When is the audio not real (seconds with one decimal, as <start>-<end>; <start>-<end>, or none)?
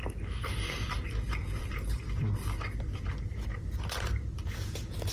0.0-3.1